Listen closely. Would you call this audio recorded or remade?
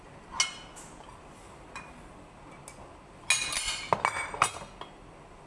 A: recorded